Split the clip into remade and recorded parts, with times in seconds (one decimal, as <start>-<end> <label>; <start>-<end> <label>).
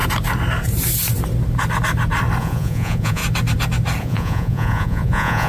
0.0-2.4 recorded; 2.4-3.2 remade; 3.2-4.0 recorded; 4.0-5.5 remade